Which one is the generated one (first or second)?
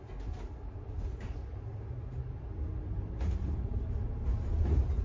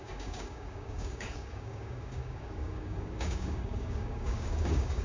second